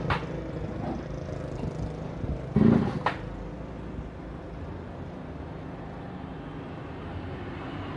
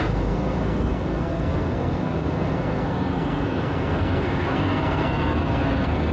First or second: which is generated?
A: second